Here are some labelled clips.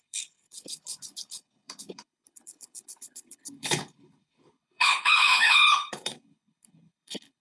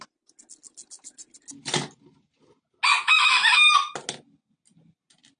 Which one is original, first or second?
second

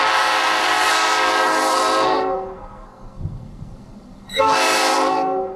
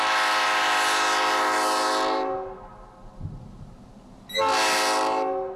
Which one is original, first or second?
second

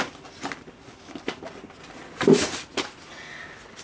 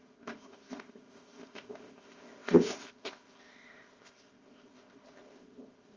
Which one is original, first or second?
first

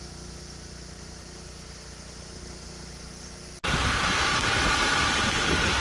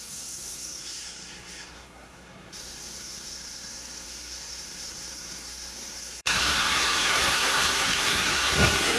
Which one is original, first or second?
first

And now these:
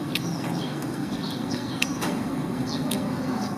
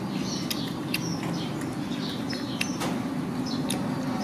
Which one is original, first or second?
second